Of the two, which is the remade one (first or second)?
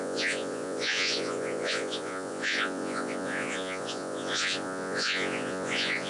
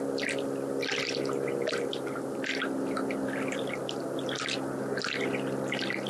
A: first